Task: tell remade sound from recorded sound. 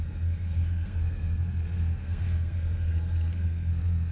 remade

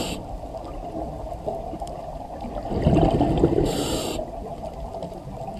recorded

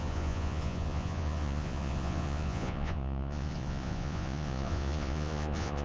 remade